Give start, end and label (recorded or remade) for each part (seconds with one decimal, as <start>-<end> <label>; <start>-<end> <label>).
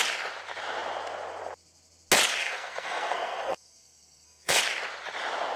0.0-2.4 recorded; 2.4-4.6 remade; 4.6-5.6 recorded